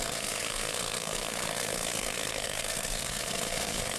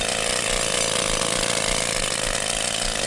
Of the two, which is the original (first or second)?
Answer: second